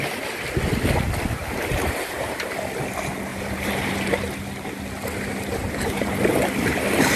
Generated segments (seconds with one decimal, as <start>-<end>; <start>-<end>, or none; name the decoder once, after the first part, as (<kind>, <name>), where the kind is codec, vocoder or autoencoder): 1.4-2.5 (vocoder, BigVGAN v2); 3.3-3.9; 5.6-6.2